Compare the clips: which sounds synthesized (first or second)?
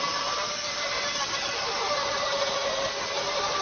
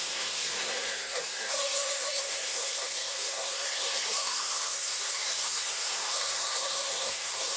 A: second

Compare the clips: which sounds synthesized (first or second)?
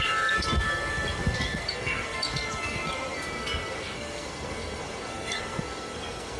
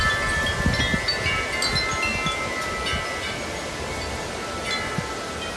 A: first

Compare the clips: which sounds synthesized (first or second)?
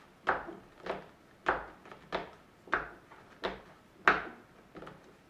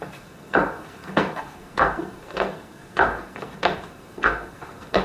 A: second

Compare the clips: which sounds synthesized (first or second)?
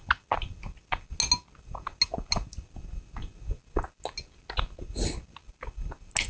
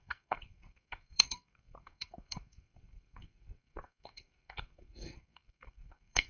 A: second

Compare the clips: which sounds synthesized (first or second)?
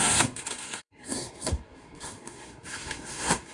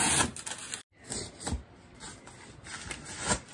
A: first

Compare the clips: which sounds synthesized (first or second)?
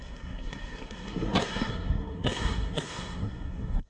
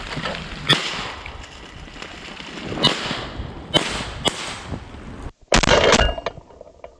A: first